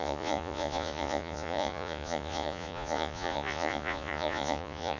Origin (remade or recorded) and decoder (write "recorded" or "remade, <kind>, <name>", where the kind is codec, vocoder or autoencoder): remade, vocoder, Vocos